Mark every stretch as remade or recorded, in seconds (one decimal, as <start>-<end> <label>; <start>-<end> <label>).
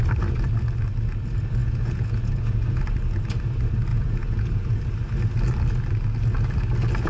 0.0-1.6 recorded; 1.6-2.8 remade; 2.8-3.9 recorded; 3.9-4.8 remade; 4.8-7.1 recorded